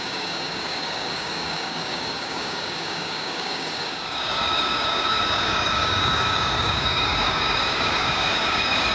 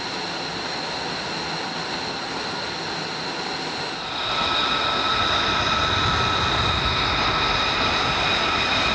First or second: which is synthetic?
first